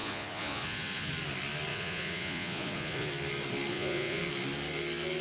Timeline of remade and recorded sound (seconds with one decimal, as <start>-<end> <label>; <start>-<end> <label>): 0.0-1.1 remade; 1.1-1.7 recorded; 1.7-3.1 remade; 3.1-3.7 recorded; 3.7-4.2 remade; 4.2-5.2 recorded